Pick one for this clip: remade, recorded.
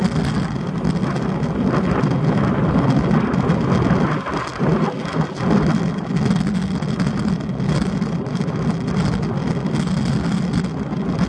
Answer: recorded